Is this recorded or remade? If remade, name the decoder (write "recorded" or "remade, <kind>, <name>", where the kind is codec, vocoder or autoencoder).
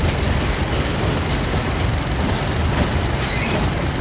recorded